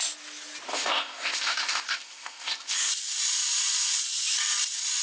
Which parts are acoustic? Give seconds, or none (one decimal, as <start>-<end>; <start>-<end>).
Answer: 0.0-0.7; 2.9-5.0

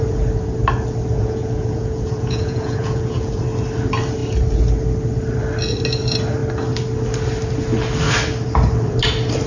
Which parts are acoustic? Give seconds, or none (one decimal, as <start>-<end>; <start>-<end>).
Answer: 0.0-1.1; 3.4-9.5

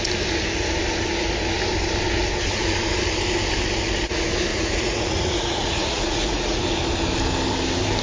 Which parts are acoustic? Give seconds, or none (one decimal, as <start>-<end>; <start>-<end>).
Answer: 0.0-4.5; 6.6-8.0

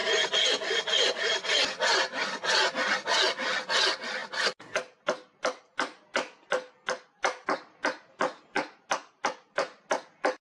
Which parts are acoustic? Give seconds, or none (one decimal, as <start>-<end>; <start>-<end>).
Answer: 0.0-10.4

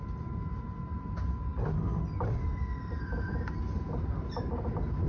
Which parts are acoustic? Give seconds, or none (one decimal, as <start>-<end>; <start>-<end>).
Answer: 1.5-2.8; 3.3-4.0